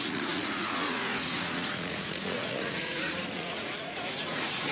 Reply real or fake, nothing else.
fake